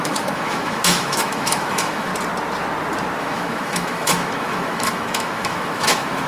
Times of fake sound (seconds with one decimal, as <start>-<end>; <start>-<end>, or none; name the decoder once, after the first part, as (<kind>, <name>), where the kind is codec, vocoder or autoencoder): 0.0-2.1 (autoencoder, DAC-VAE); 3.2-6.3